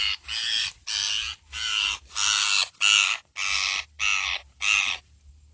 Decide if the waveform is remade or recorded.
recorded